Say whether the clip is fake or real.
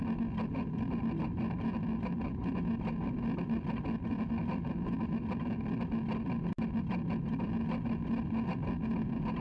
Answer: real